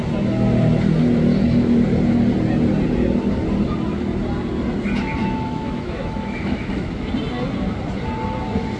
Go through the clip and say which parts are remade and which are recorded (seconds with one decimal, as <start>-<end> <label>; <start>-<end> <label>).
0.0-5.2 recorded; 5.2-7.1 remade; 7.1-8.8 recorded